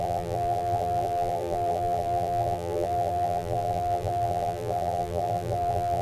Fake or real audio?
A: fake